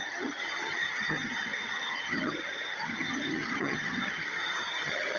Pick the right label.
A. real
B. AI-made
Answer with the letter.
B